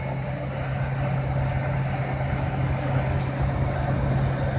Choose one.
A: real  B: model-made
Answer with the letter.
A